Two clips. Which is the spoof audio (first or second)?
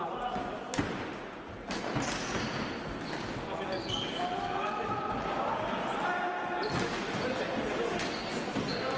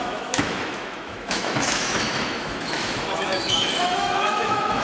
second